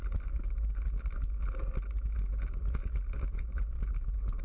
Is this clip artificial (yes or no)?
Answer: no